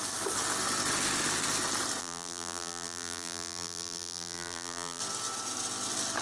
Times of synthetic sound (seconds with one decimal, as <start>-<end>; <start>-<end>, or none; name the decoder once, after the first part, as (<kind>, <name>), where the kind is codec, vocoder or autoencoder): 2.0-5.0 (vocoder, BigVGAN v2)